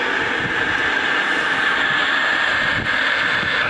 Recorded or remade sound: recorded